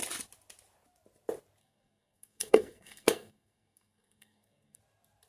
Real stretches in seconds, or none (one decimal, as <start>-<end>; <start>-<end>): 0.0-1.6; 4.8-5.3